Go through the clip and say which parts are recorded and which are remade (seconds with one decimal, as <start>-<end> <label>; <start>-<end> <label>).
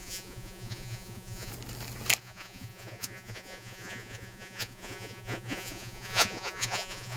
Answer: 0.0-1.5 remade; 1.5-2.2 recorded; 2.2-7.2 remade